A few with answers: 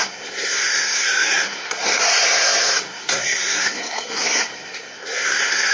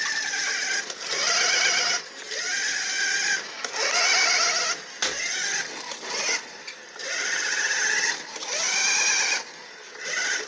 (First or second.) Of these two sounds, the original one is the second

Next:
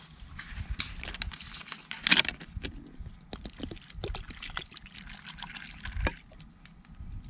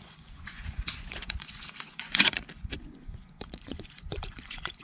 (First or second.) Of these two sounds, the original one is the first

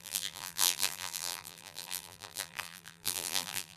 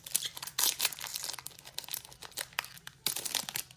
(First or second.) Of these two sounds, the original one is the second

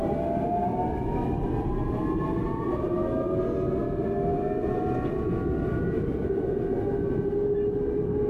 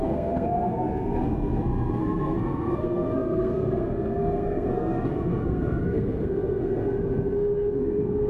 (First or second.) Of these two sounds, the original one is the first